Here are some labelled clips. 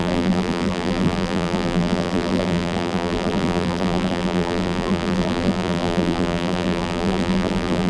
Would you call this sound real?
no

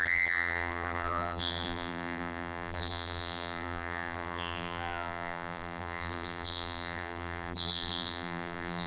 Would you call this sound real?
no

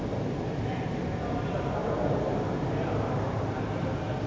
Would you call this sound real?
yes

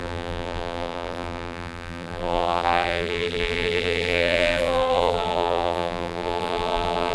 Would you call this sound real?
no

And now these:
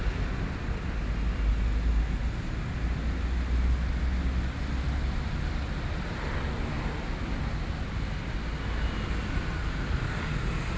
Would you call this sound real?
yes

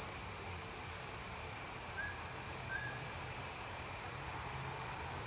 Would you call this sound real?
no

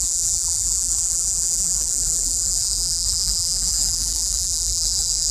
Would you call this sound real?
no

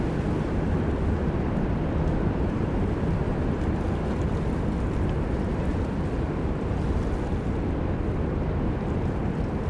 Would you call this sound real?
yes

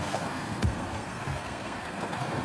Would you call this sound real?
no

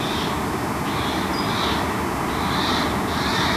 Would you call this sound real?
yes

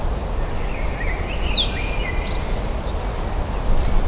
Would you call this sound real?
yes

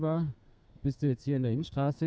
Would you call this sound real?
no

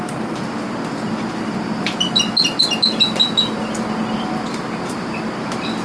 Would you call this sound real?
yes